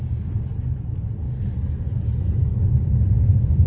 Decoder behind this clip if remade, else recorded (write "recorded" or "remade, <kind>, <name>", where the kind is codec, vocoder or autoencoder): recorded